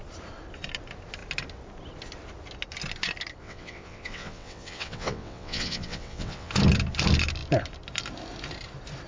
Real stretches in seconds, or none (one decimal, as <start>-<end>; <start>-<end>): 0.0-3.4; 6.5-9.1